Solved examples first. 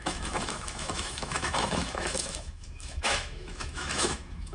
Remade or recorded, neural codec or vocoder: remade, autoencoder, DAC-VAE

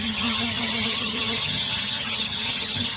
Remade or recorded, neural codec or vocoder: remade, vocoder, HiFi-GAN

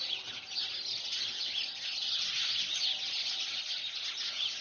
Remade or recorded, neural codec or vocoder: recorded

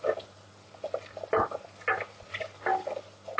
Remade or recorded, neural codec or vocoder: recorded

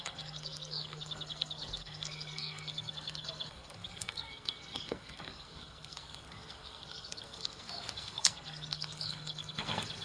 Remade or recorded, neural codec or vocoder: remade, codec, SNAC